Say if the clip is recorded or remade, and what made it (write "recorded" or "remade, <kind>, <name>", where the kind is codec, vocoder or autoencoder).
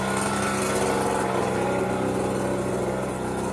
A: recorded